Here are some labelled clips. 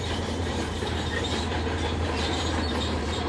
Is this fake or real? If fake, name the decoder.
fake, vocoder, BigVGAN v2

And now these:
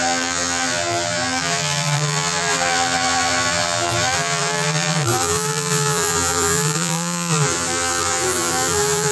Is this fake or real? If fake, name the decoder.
fake, vocoder, BigVGAN v2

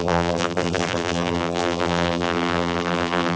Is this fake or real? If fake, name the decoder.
fake, vocoder, BigVGAN v2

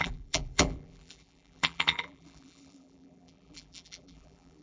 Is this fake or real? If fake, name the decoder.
fake, vocoder, BigVGAN v2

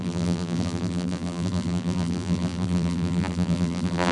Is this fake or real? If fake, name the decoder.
fake, vocoder, BigVGAN v2